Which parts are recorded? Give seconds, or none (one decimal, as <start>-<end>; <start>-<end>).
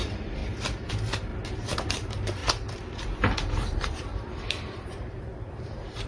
0.4-0.9; 1.3-1.9; 2.4-3.1